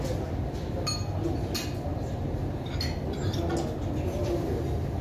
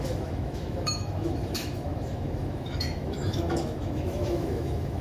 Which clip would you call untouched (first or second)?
first